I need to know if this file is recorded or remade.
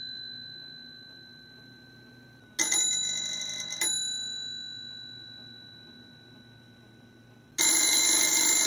recorded